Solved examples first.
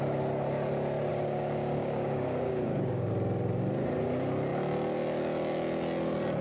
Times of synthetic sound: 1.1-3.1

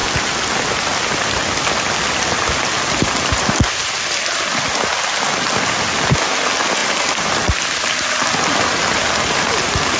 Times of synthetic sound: none

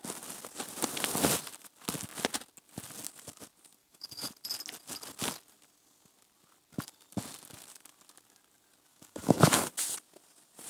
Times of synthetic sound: 3.8-4.3; 8.9-9.7

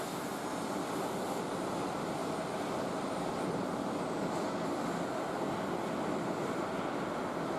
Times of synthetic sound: none